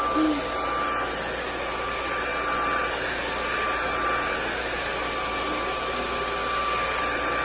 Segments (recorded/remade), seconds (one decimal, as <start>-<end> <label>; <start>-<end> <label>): 0.0-7.4 recorded